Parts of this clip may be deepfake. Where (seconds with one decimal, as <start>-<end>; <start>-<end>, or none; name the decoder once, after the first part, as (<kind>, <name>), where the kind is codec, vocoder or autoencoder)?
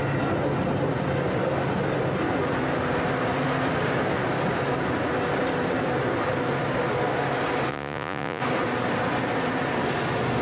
7.7-8.4 (vocoder, Vocos)